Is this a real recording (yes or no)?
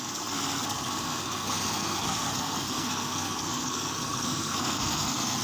no